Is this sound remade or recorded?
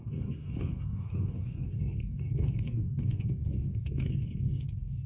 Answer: remade